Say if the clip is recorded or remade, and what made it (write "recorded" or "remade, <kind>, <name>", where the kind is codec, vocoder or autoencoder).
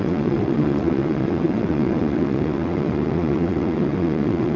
remade, vocoder, WaveNeXt